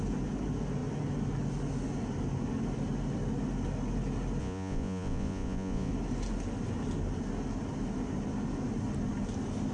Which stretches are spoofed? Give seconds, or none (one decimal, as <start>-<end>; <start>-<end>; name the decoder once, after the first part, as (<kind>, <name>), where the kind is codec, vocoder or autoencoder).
4.4-5.9 (vocoder, Vocos)